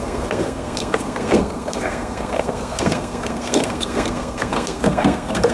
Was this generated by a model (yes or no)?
yes